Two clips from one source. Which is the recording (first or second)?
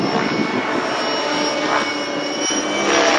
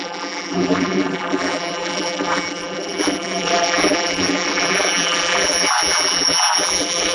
first